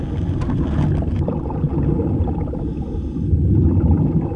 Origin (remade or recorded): recorded